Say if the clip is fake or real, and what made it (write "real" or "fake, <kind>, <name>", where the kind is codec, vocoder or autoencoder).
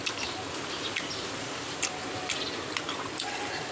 real